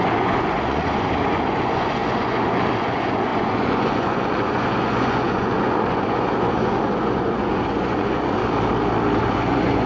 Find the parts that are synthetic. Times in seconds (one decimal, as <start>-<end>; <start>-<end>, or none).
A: 0.0-8.4; 9.2-9.9